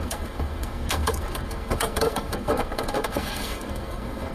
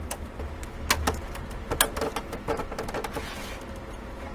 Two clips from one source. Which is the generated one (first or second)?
first